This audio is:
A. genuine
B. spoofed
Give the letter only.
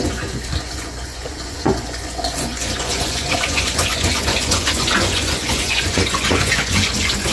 B